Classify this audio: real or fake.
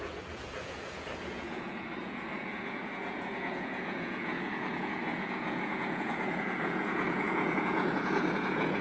fake